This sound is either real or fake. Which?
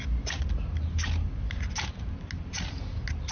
real